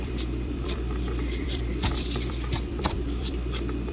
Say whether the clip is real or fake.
fake